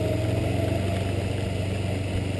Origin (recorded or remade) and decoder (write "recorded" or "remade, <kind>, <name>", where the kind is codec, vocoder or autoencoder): recorded